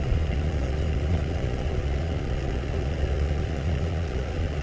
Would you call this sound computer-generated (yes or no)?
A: yes